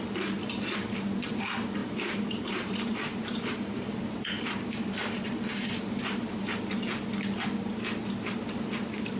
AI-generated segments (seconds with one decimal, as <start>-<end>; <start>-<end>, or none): 1.8-6.6